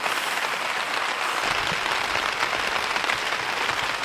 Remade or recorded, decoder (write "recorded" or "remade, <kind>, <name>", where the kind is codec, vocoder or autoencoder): recorded